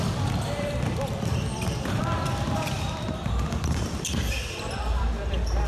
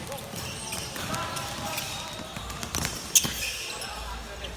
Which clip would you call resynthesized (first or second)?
first